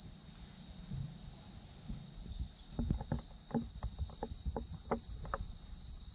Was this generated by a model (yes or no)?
no